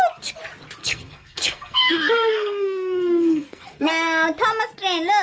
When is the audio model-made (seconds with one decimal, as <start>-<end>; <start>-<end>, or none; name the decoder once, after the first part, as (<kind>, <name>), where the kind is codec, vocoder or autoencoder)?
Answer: 0.8-3.9 (codec, SNAC)